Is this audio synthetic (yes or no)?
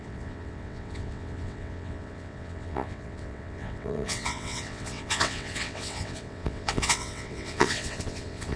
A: yes